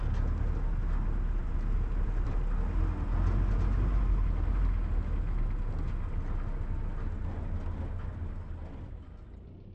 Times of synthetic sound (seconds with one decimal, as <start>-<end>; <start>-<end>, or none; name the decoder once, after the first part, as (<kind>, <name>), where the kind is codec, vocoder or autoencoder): 1.4-2.4 (vocoder, BigVGAN v2)